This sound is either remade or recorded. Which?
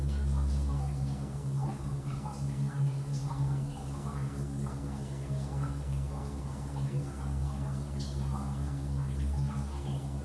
remade